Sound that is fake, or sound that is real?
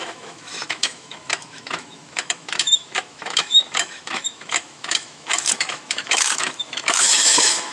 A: fake